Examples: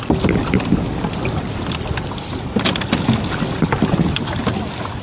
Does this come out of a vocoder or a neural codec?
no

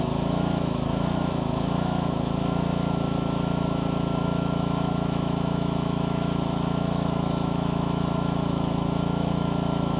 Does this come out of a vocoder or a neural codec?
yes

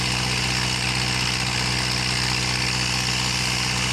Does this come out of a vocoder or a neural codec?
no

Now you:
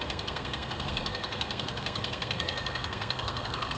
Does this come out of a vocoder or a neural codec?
yes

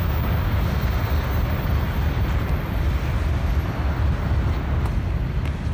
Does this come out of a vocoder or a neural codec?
no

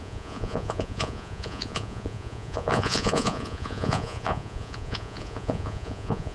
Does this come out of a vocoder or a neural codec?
yes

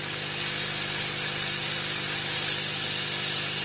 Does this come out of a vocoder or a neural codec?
no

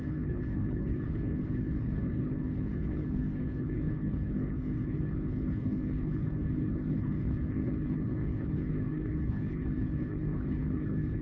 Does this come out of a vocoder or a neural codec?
yes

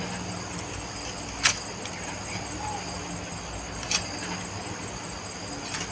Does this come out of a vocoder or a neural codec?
no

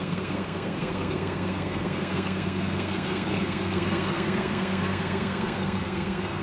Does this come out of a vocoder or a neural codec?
yes